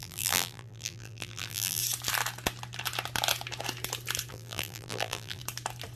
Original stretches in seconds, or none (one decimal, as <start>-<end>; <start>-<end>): 1.8-4.3; 5.4-6.0